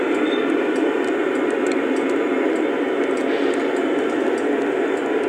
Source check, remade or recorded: remade